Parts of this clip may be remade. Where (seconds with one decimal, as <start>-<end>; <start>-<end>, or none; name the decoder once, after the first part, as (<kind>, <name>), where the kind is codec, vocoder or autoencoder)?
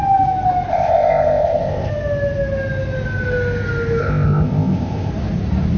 0.7-1.9 (codec, ZipCodec); 4.0-5.1